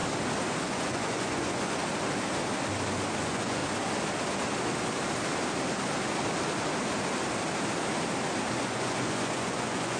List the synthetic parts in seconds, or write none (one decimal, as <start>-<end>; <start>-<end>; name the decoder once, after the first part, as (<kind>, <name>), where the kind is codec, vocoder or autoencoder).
0.6-1.8 (vocoder, Vocos); 3.2-3.6; 8.6-10.0